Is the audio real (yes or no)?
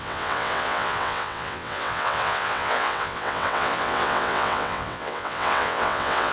no